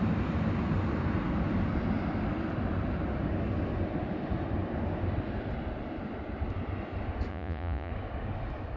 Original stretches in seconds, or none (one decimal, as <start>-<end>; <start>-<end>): 0.0-7.3; 7.9-8.8